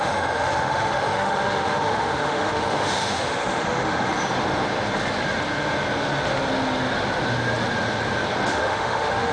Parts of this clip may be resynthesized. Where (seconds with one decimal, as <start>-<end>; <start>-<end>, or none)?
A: 0.0-4.1; 8.5-9.3